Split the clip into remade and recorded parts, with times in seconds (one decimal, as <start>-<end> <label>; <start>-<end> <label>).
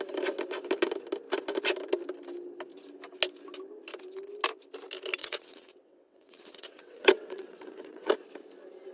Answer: 0.0-5.2 recorded; 5.2-8.1 remade; 8.1-8.9 recorded